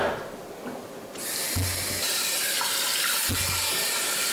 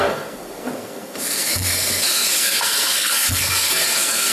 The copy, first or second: second